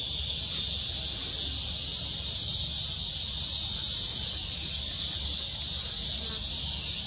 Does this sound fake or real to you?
real